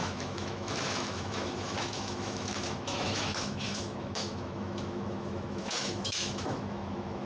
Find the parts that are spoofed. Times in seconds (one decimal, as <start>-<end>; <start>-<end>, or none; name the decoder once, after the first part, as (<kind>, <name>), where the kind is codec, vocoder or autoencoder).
0.0-7.3 (autoencoder, DAC-VAE)